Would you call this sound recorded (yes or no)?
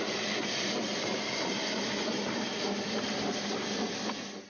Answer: yes